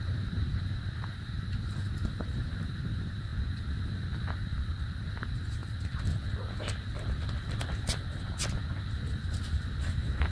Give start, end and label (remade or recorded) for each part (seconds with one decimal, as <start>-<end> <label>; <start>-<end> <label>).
0.0-3.3 remade; 3.3-5.1 recorded; 5.1-5.6 remade; 5.6-9.2 recorded; 9.2-10.3 remade